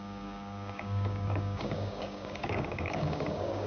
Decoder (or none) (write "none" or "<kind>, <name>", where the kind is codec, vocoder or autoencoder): codec, DAC